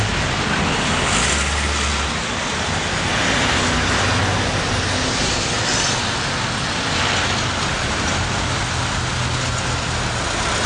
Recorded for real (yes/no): yes